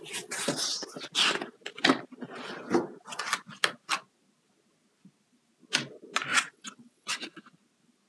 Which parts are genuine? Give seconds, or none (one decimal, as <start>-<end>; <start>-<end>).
0.0-6.3; 7.4-8.1